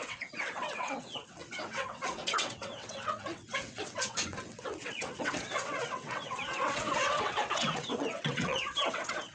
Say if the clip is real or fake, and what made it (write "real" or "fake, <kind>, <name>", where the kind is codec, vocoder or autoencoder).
fake, vocoder, WaveNeXt